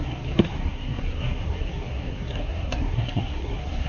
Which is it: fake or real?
fake